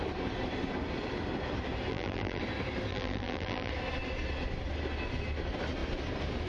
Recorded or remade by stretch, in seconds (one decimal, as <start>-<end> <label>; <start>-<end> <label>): 0.0-1.9 recorded; 1.9-2.4 remade; 2.4-2.9 recorded; 2.9-3.7 remade; 3.7-6.5 recorded